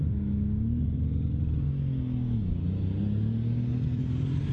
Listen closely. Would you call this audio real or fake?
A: real